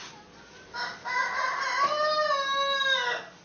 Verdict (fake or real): real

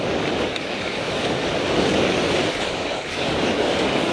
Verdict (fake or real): fake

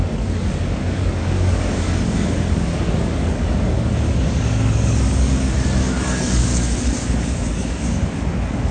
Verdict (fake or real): fake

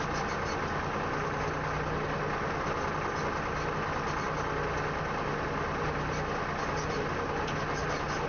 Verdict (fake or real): real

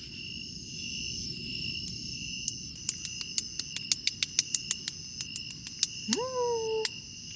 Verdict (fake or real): real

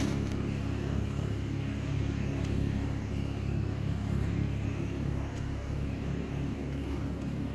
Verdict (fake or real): fake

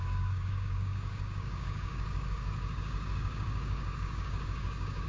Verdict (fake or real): fake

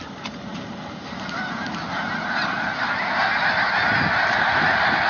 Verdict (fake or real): real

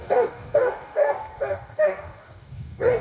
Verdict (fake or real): fake